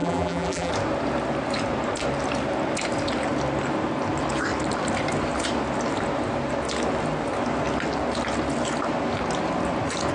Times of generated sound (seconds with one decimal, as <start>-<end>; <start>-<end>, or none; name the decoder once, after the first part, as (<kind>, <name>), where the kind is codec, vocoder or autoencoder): 0.0-0.7 (vocoder, BigVGAN v2)